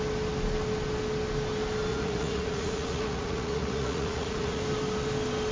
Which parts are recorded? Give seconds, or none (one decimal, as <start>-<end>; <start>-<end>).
0.0-1.9; 4.6-5.5